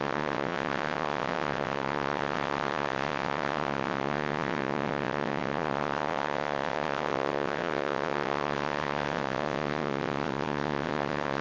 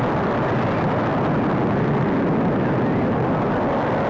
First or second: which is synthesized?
first